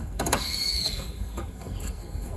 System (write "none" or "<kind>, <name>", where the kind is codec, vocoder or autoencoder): codec, SNAC